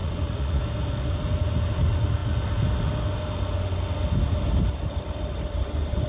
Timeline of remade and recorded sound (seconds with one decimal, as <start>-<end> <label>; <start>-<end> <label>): 0.0-0.6 remade; 0.6-6.1 recorded